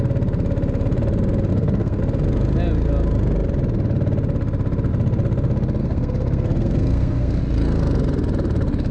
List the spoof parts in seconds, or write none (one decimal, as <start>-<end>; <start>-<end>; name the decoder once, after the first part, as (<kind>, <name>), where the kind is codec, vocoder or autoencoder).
1.5-2.0 (codec, SNAC); 5.8-7.4